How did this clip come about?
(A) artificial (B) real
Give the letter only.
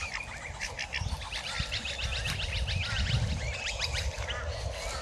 B